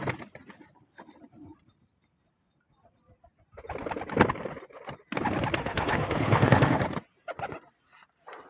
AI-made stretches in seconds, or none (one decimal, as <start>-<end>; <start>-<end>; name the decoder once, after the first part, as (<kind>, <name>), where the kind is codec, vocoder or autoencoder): 5.6-6.8 (autoencoder, DAC-VAE)